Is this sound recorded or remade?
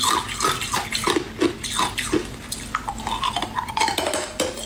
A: recorded